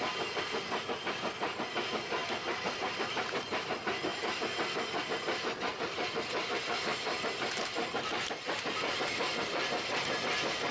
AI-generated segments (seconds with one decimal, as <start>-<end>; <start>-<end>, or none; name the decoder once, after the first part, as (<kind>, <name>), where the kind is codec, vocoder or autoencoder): none